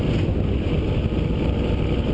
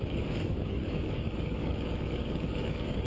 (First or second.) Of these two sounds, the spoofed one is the second